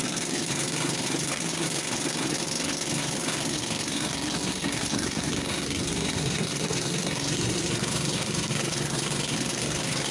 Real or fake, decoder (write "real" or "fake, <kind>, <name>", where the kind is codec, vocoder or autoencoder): fake, codec, SNAC